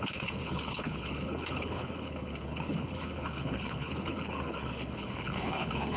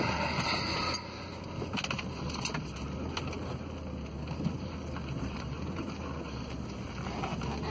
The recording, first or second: second